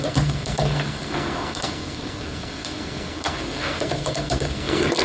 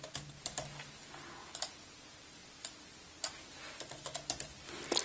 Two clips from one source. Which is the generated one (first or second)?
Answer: first